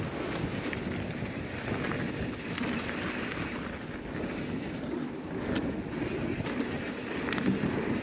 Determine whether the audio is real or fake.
real